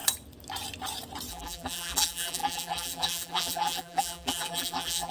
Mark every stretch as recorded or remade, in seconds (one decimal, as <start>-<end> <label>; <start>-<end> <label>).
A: 0.0-1.3 recorded; 1.3-5.1 remade